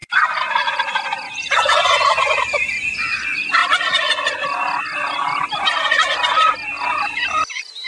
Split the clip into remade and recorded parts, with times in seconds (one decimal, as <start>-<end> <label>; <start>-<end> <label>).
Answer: 0.0-0.7 remade; 0.7-7.9 recorded